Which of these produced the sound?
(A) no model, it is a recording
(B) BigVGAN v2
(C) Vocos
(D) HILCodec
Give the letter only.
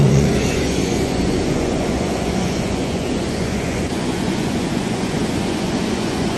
C